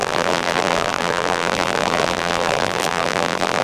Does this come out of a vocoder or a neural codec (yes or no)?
yes